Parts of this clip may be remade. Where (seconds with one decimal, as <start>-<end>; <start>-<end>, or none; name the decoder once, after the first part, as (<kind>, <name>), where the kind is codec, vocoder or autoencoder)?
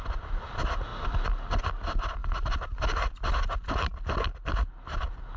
none